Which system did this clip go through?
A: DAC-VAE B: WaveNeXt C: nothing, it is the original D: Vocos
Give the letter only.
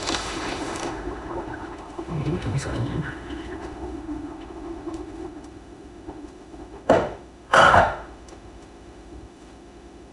A